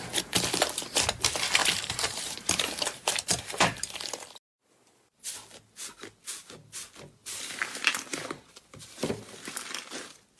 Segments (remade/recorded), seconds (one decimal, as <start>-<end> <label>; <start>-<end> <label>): 0.0-1.6 recorded; 1.6-4.2 remade; 4.2-7.2 recorded; 7.2-9.1 remade; 9.1-10.4 recorded